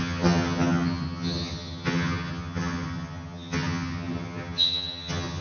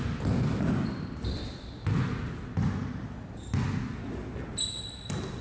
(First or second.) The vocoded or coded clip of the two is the first